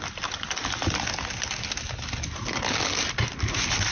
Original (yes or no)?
yes